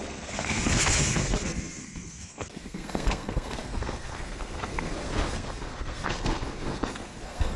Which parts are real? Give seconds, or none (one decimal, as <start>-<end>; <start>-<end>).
none